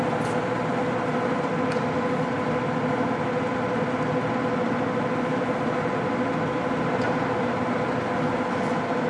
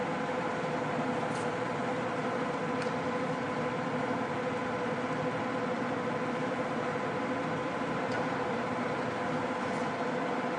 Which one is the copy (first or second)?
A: second